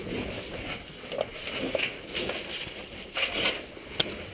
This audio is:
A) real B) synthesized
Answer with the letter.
A